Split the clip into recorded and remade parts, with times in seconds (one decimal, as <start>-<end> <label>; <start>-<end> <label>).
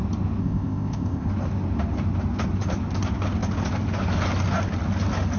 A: 0.0-0.4 recorded; 0.4-1.3 remade; 1.3-5.4 recorded